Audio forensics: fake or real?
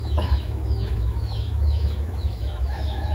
fake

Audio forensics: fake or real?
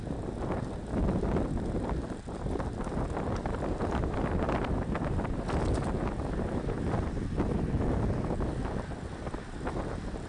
real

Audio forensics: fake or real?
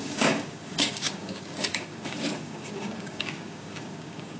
fake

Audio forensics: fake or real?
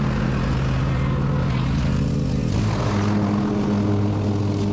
real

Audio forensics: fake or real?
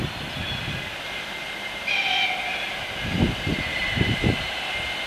real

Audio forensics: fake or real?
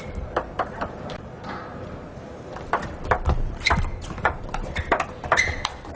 fake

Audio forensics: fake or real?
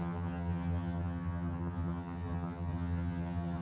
fake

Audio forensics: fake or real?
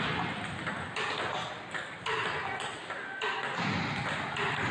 real